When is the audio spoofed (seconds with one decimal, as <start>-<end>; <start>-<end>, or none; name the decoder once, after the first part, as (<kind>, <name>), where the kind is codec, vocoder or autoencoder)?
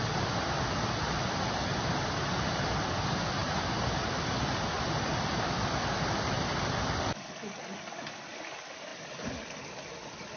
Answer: none